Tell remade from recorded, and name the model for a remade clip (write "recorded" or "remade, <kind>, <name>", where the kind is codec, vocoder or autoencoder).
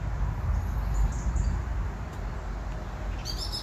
recorded